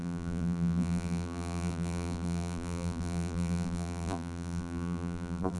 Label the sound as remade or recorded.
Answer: remade